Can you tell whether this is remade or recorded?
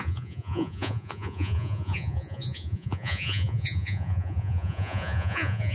remade